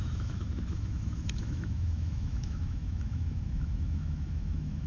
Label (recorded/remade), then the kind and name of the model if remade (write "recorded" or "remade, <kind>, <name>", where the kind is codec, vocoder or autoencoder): remade, autoencoder, DAC-VAE